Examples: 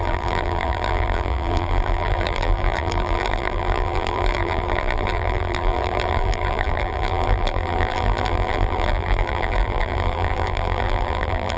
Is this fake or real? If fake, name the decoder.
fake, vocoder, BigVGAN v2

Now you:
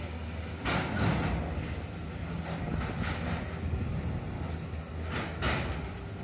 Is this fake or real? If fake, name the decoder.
real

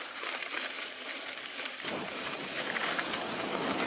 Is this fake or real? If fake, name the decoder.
fake, vocoder, BigVGAN v2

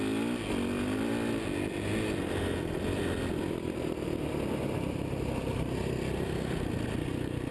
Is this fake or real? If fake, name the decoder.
real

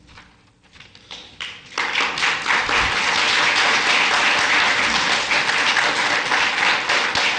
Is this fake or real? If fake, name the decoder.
real